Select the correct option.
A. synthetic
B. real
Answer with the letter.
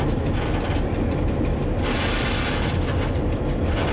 B